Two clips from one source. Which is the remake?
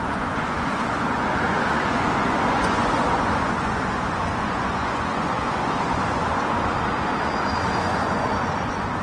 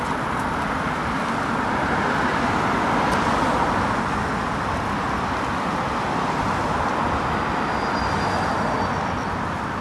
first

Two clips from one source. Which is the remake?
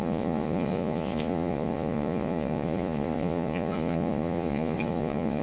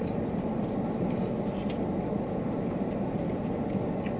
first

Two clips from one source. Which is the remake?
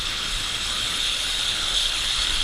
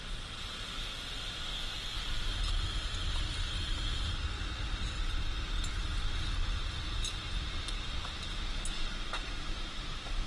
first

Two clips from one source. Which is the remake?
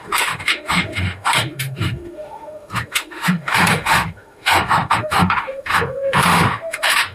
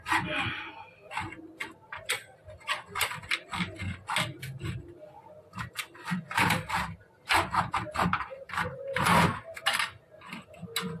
first